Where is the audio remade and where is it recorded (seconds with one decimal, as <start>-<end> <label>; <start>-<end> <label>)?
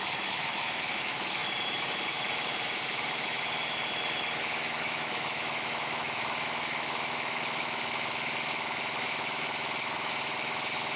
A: 0.0-11.0 remade